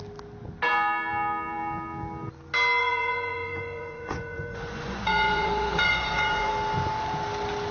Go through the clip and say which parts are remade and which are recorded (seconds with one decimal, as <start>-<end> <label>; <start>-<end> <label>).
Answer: 0.0-2.8 recorded; 2.8-6.5 remade; 6.5-7.7 recorded